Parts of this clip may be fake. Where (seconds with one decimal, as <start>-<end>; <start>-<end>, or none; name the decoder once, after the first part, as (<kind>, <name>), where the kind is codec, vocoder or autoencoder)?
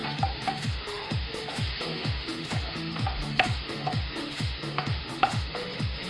0.0-6.1 (autoencoder, DAC-VAE)